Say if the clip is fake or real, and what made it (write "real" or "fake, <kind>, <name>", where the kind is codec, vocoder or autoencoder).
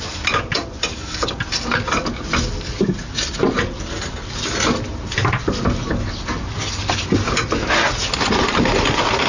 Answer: real